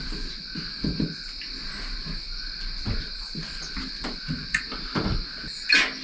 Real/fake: real